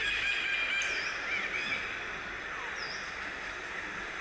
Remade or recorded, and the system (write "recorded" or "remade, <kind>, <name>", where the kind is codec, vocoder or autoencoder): recorded